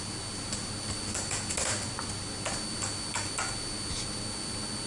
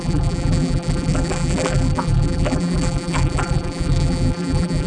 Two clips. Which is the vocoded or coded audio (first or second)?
second